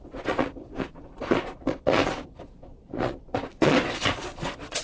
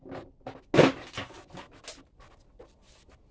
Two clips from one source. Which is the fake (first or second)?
first